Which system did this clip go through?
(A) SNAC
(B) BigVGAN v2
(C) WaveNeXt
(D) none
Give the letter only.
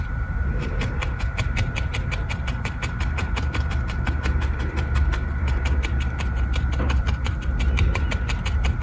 B